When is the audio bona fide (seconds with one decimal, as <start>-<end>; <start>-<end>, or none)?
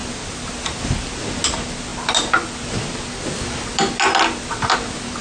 0.0-5.2